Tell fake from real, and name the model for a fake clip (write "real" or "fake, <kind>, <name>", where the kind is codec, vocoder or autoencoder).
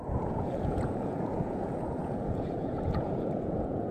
fake, vocoder, Vocos